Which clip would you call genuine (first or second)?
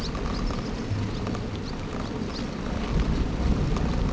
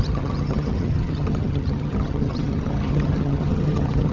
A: first